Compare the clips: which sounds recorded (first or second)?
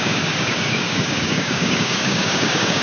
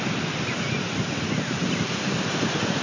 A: second